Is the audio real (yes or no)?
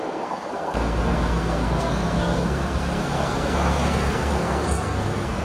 no